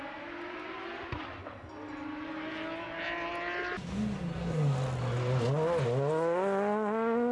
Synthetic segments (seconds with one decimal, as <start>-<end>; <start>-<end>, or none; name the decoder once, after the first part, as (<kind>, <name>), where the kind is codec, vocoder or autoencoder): none